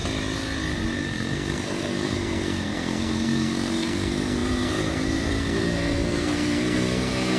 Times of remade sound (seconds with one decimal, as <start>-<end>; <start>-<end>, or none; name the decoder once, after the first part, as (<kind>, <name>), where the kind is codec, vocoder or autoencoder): 1.0-7.4 (codec, SNAC)